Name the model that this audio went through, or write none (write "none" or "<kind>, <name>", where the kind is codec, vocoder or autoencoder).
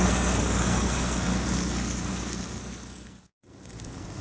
codec, SNAC